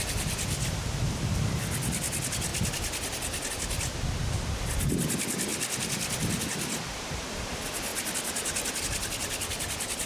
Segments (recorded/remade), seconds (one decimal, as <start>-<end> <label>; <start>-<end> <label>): 0.0-10.1 recorded